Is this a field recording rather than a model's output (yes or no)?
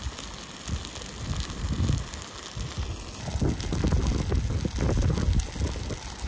yes